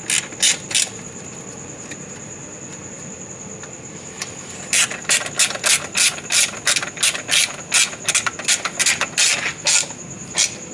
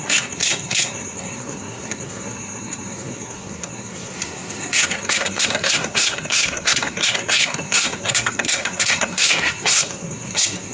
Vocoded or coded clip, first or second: second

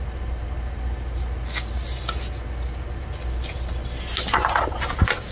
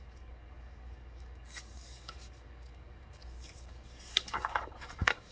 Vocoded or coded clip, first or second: second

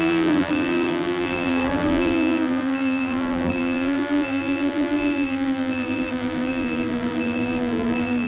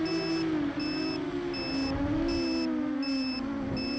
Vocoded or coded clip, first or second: first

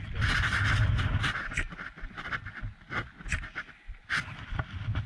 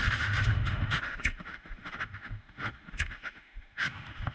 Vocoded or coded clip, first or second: second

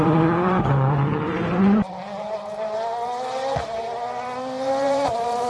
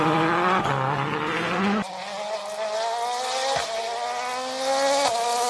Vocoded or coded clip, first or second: first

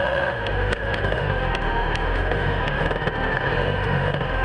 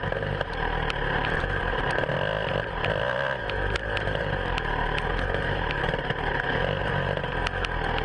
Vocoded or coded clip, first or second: first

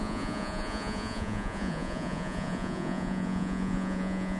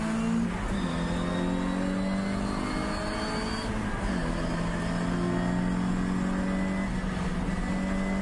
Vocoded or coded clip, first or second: first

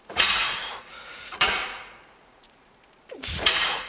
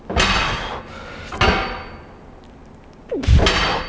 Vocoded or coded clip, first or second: first